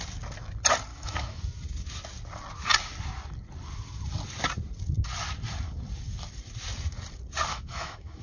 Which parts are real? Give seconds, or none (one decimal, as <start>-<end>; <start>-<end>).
0.0-0.9; 1.4-7.5